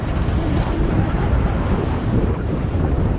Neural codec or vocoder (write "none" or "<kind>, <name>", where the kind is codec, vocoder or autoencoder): vocoder, BigVGAN v2